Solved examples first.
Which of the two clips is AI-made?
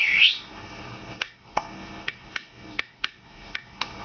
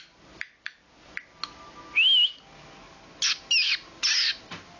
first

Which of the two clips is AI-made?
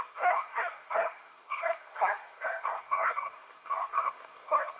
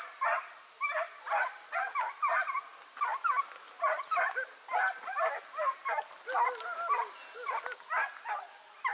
first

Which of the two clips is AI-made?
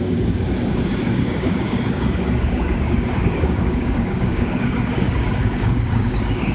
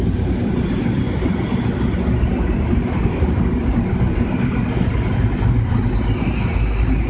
first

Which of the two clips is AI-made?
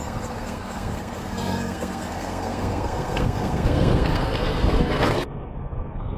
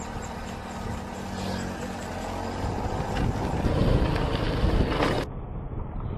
first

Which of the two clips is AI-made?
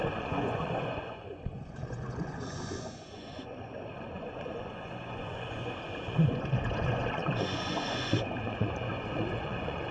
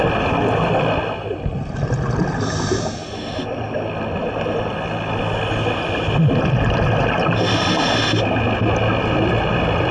first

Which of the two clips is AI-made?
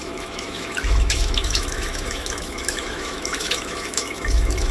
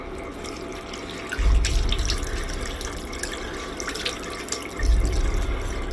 first